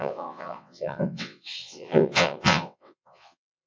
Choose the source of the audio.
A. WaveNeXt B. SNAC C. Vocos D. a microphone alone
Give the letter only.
A